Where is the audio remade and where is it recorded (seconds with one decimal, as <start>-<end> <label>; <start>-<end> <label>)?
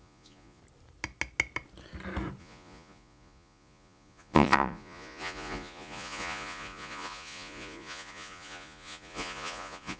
0.0-0.6 remade; 0.6-2.4 recorded; 2.4-10.0 remade